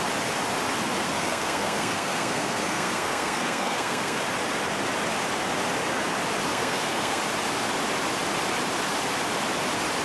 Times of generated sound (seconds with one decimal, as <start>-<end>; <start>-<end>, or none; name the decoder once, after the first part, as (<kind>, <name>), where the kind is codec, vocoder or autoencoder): 1.0-4.2 (codec, SNAC); 6.5-7.2